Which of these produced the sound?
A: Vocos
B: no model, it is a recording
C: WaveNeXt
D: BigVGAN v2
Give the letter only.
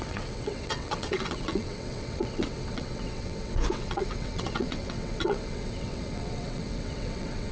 C